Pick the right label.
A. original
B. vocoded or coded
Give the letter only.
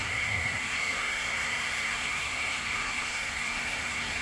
B